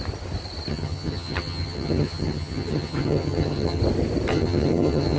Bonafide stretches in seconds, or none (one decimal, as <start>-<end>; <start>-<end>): 0.0-0.7; 3.8-4.3